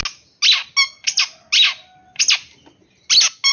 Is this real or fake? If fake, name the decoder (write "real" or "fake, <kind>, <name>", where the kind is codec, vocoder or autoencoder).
real